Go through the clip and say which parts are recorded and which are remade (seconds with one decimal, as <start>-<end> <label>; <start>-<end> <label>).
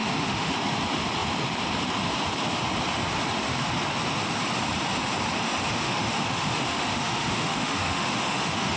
0.0-0.5 remade; 0.5-5.6 recorded; 5.6-8.8 remade